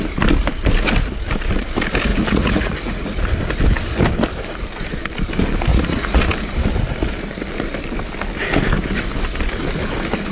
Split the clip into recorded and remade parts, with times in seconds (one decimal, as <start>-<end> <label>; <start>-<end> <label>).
0.0-2.1 recorded; 2.1-3.2 remade; 3.2-5.7 recorded; 5.7-6.2 remade; 6.2-10.3 recorded